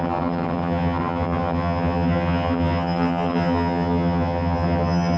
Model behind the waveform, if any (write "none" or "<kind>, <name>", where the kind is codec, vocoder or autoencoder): vocoder, HiFi-GAN